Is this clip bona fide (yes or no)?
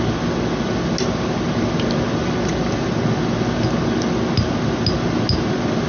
yes